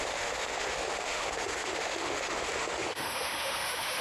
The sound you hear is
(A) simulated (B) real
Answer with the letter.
A